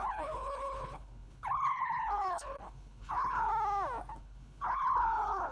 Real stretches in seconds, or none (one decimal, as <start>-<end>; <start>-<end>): 3.5-4.2